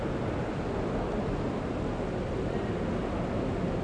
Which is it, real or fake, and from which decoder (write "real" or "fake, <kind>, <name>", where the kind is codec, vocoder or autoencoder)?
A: real